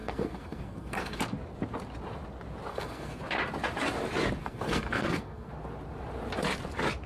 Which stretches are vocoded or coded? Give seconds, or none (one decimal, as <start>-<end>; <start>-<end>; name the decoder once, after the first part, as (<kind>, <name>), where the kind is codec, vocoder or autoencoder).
0.0-1.2 (codec, SNAC); 2.7-3.2; 4.4-5.5